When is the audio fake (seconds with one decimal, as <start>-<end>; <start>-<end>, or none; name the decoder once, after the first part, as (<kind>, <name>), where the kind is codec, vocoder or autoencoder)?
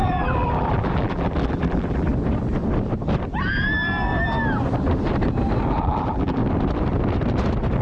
0.0-2.1 (vocoder, BigVGAN v2); 5.7-6.4